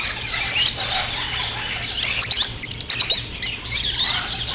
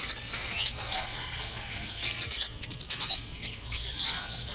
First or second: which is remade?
second